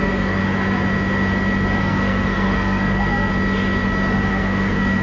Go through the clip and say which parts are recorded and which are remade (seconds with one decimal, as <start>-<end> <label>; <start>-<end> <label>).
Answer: 0.0-0.4 remade; 0.4-1.8 recorded; 1.8-3.3 remade; 3.3-4.3 recorded; 4.3-5.0 remade